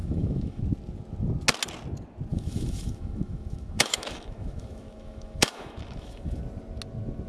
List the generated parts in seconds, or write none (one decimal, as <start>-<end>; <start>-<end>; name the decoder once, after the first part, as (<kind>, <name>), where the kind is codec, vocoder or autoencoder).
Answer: 0.0-0.6 (autoencoder, DAC-VAE); 2.3-6.4